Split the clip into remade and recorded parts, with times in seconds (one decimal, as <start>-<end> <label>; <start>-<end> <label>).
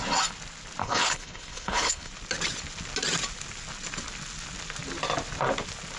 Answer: 0.0-0.8 recorded; 0.8-2.1 remade; 2.1-6.0 recorded